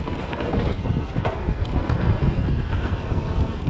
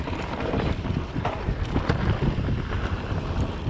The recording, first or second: second